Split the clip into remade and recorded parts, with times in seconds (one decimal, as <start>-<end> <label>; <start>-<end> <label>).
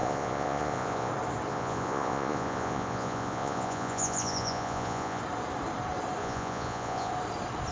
0.0-1.1 remade; 1.1-1.5 recorded; 1.5-5.2 remade; 5.2-6.2 recorded; 6.2-7.1 remade; 7.1-7.7 recorded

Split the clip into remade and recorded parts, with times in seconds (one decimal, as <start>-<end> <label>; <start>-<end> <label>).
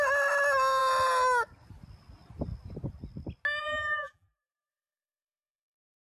0.0-3.6 recorded; 3.6-4.7 remade; 4.7-6.0 recorded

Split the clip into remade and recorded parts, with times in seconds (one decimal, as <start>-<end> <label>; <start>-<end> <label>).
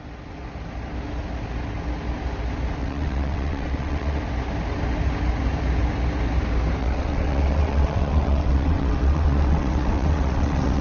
0.0-2.8 recorded; 2.8-4.2 remade; 4.2-6.8 recorded; 6.8-10.8 remade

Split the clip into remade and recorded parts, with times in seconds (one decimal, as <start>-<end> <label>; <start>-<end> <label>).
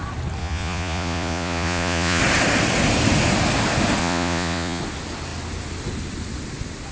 0.0-0.4 recorded; 0.4-2.2 remade; 2.2-4.0 recorded; 4.0-4.8 remade; 4.8-6.9 recorded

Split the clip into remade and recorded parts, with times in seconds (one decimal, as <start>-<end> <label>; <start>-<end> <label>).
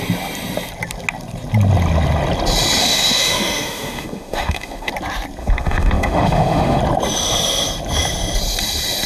0.0-2.8 recorded; 2.8-4.9 remade; 4.9-5.4 recorded; 5.4-6.8 remade; 6.8-9.1 recorded